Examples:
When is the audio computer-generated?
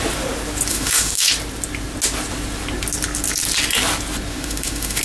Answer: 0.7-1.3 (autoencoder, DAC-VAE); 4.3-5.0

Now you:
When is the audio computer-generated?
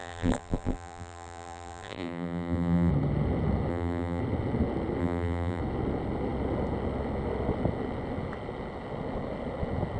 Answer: 0.0-2.9 (vocoder, BigVGAN v2); 3.7-4.2; 5.0-5.6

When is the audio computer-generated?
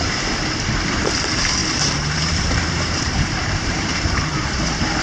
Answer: 1.6-4.6 (vocoder, BigVGAN v2)